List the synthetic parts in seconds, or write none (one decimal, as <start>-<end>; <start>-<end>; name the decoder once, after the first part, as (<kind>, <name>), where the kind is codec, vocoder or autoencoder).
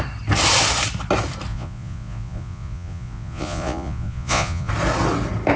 1.5-4.7 (vocoder, Vocos)